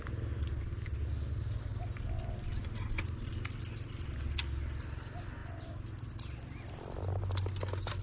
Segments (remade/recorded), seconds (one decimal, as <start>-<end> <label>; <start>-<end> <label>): 0.0-8.0 recorded